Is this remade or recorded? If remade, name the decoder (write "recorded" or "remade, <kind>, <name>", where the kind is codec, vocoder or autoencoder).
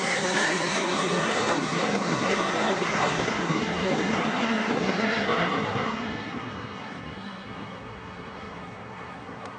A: remade, codec, SNAC